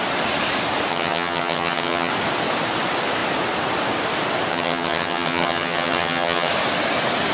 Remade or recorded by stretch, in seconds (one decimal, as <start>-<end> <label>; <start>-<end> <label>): 0.0-0.9 recorded; 0.9-2.1 remade; 2.1-4.5 recorded; 4.5-6.5 remade; 6.5-7.3 recorded